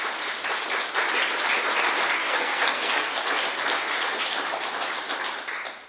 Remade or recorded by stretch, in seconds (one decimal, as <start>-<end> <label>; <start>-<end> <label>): 0.0-2.2 recorded; 2.2-3.1 remade; 3.1-5.9 recorded